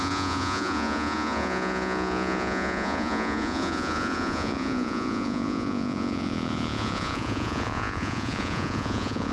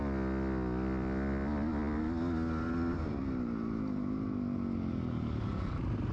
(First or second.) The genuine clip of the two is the second